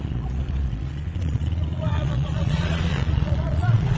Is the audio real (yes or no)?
no